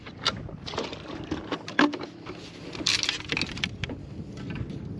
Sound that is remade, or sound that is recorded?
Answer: recorded